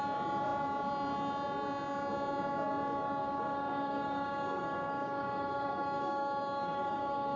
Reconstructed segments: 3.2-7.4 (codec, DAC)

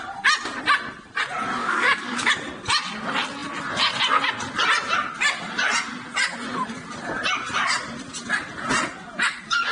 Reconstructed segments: 1.6-2.3 (codec, DAC)

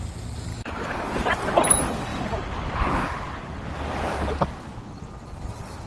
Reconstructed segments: 0.5-1.1 (codec, DAC)

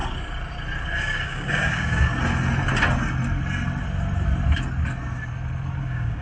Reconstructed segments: 1.0-2.1 (codec, DAC); 5.8-6.2

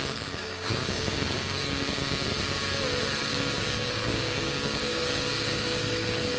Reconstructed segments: 0.0-2.3 (codec, DAC); 3.2-6.4